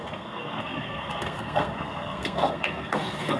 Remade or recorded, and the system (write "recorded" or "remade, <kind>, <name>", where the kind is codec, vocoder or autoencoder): remade, codec, SNAC